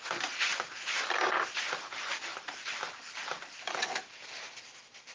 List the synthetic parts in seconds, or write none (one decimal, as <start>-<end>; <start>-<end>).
none